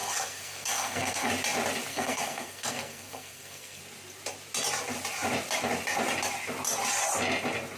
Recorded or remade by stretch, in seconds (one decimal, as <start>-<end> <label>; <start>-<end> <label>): 0.0-1.3 remade; 1.3-1.9 recorded; 1.9-3.8 remade; 3.8-7.8 recorded